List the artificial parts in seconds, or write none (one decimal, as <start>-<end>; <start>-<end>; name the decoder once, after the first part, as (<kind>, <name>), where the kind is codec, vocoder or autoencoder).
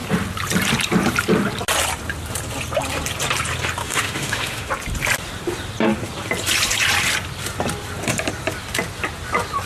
3.8-4.7 (autoencoder, DAC-VAE)